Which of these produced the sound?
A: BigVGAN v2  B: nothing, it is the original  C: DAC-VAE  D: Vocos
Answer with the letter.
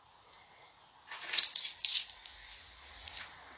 D